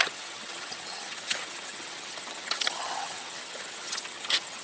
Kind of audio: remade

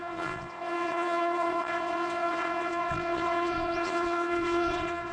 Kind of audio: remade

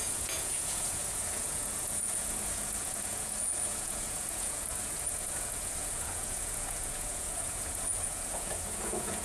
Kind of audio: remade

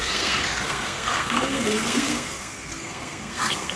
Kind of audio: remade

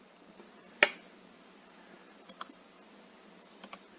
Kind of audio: recorded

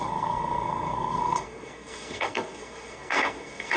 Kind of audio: remade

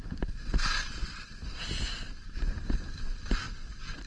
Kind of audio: recorded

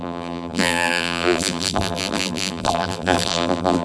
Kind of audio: remade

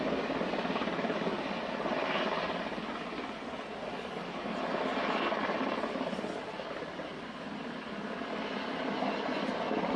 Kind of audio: recorded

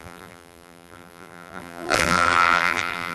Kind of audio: remade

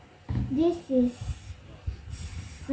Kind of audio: recorded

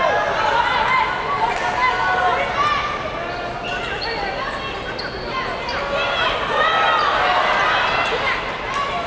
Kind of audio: recorded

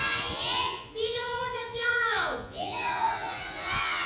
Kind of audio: remade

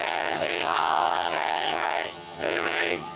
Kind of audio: remade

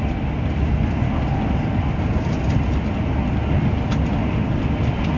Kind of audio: recorded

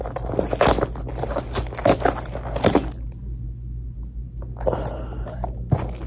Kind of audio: recorded